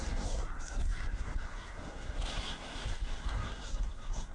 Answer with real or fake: fake